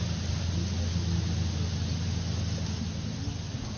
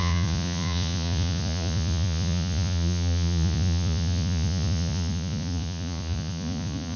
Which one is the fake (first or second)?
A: second